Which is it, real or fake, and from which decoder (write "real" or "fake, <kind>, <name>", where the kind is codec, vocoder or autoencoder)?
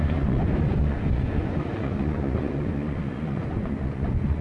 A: fake, vocoder, Vocos